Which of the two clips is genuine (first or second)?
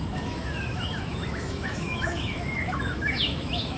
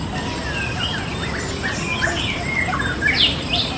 second